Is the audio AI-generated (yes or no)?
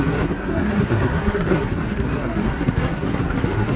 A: yes